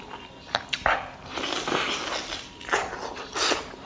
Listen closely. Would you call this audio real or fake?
real